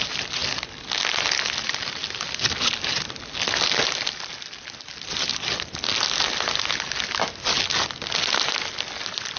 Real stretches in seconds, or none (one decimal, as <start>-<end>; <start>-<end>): 0.0-9.4